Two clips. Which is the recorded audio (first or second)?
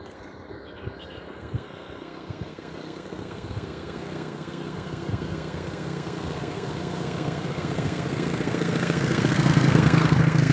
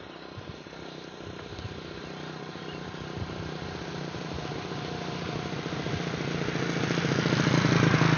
second